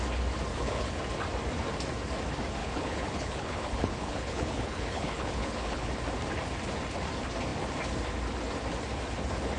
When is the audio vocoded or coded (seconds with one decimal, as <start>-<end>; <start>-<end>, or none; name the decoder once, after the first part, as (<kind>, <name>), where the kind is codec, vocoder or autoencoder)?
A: 0.5-1.0 (codec, HILCodec); 2.6-5.9